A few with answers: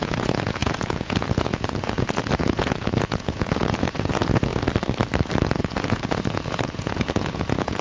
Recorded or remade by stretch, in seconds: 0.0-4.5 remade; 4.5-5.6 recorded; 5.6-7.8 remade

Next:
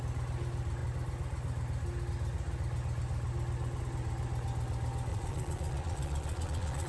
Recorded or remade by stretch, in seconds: 0.0-5.1 recorded; 5.1-6.9 remade

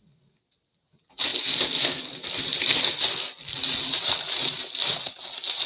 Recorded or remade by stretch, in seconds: 0.0-5.7 recorded

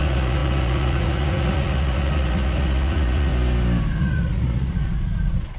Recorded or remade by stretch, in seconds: 0.0-3.3 remade; 3.3-4.0 recorded; 4.0-5.6 remade

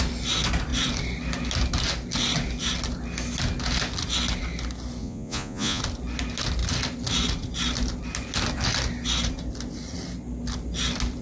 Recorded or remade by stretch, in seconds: 0.0-5.0 recorded; 5.0-5.8 remade; 5.8-11.2 recorded